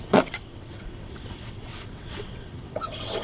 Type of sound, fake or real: fake